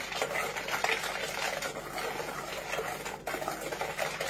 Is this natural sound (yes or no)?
yes